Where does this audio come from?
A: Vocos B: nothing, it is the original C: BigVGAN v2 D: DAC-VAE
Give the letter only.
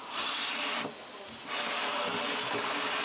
B